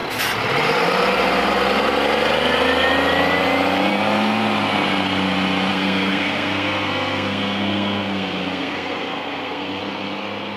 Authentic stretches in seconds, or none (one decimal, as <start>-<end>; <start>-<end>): 0.0-5.7; 9.8-10.6